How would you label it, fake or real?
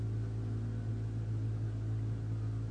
real